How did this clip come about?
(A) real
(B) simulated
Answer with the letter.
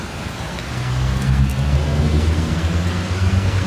B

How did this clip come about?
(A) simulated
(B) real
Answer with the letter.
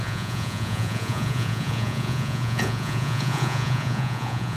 A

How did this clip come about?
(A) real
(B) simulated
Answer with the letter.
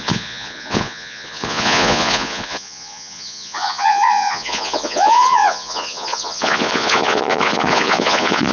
B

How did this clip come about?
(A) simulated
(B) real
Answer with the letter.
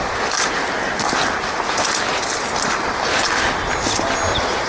B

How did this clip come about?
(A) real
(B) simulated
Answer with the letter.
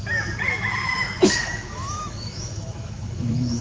B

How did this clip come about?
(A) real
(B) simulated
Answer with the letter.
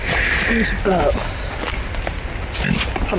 A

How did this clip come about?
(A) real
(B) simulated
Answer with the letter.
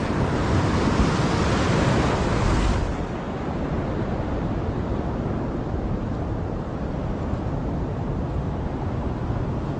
A